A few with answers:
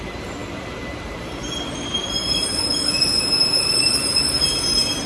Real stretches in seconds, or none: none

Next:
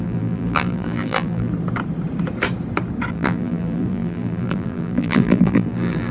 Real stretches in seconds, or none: 1.5-3.1

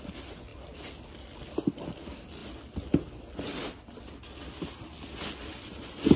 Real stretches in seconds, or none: 0.0-6.2

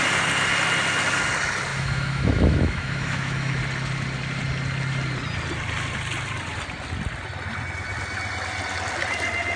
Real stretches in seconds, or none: 0.0-1.7; 3.6-9.6

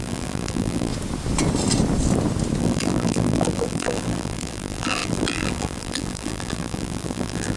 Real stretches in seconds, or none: 0.9-2.6